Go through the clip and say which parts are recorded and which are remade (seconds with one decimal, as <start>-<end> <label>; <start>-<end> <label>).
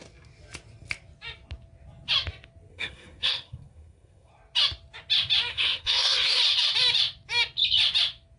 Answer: 0.0-2.7 recorded; 2.7-4.3 remade; 4.3-5.5 recorded; 5.5-6.4 remade; 6.4-8.4 recorded